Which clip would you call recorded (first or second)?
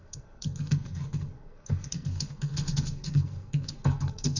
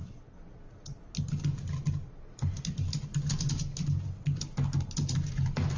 second